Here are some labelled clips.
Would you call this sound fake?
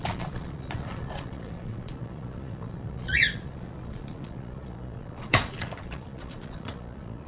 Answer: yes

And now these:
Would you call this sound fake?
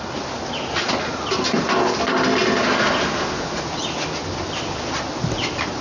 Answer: no